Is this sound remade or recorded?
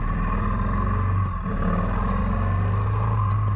recorded